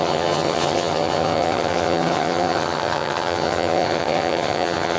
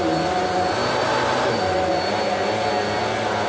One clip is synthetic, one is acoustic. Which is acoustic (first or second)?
second